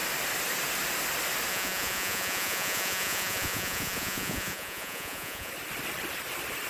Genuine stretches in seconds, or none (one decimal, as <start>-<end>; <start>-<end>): 0.0-1.5; 5.5-6.7